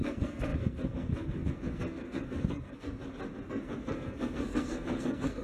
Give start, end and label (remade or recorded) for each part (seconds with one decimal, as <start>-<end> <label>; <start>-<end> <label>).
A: 0.0-3.0 remade; 3.0-3.5 recorded; 3.5-5.4 remade